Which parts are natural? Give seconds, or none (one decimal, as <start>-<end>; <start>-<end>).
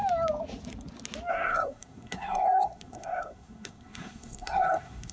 0.0-1.3